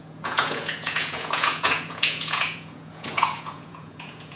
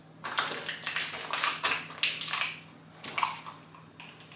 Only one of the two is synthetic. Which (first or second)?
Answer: first